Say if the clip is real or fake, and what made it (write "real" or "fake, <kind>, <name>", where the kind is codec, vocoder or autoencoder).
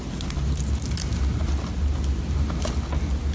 real